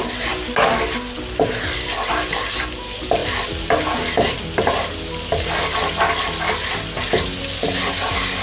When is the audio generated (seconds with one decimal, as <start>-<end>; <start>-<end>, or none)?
none